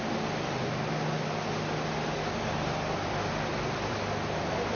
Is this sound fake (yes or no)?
no